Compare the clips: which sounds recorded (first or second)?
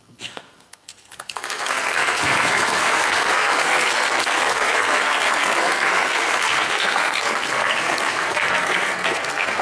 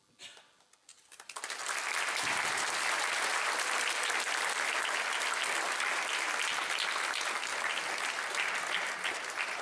second